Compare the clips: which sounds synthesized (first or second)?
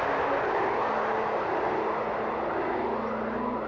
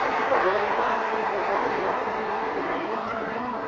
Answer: second